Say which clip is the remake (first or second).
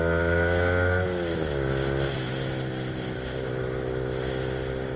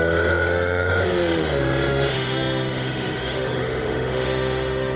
second